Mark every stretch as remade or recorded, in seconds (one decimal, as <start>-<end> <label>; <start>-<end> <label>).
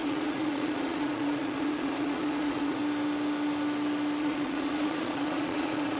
0.0-2.8 remade; 2.8-4.2 recorded; 4.2-6.0 remade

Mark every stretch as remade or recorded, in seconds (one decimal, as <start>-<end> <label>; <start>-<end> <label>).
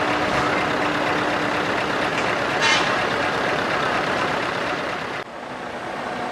0.0-2.1 recorded; 2.1-4.8 remade; 4.8-6.3 recorded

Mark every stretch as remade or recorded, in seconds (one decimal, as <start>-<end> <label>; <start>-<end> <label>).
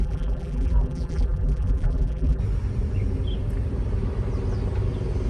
0.0-2.4 remade; 2.4-5.3 recorded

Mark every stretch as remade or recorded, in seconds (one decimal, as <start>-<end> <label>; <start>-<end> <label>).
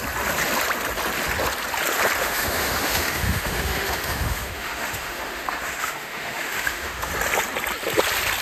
0.0-2.2 recorded; 2.2-7.1 remade; 7.1-8.4 recorded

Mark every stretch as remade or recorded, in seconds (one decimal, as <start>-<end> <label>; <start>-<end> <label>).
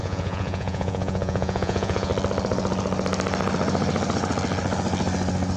0.0-2.1 remade; 2.1-5.6 recorded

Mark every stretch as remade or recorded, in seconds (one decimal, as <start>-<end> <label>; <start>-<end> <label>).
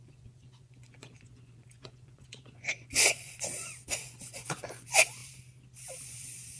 0.0-5.2 remade; 5.2-5.9 recorded; 5.9-6.6 remade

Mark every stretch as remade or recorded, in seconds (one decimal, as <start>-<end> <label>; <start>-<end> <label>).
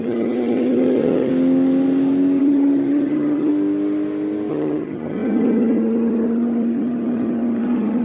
0.0-1.3 remade; 1.3-2.4 recorded; 2.4-3.5 remade; 3.5-4.5 recorded; 4.5-8.0 remade